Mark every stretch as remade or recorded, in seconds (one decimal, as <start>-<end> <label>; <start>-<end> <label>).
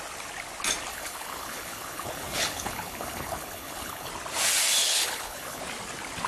0.0-0.9 recorded; 0.9-4.1 remade; 4.1-4.8 recorded; 4.8-5.6 remade; 5.6-6.3 recorded